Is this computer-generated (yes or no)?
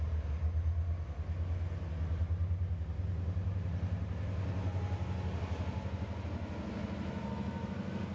no